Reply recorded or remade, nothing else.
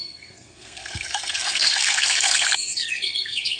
remade